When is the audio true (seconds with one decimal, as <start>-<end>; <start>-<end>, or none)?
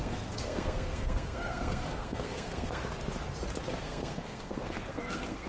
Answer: 2.8-3.7